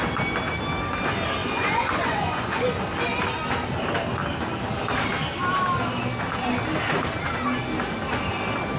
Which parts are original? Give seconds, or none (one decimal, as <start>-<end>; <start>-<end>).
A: 0.0-1.4; 2.6-8.8